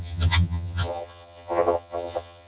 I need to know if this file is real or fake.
fake